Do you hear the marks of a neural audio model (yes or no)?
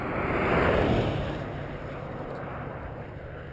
no